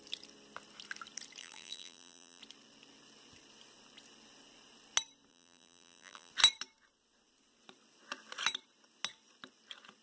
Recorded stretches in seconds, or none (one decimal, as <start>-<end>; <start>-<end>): 0.0-1.4; 2.4-5.3; 6.3-10.0